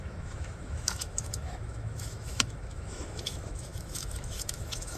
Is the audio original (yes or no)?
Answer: no